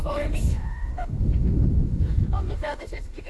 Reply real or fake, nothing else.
fake